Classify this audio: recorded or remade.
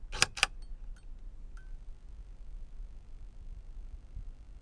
recorded